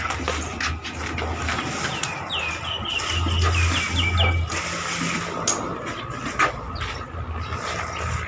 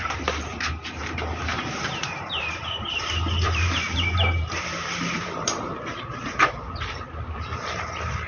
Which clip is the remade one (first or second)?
second